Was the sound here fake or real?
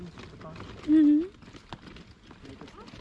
real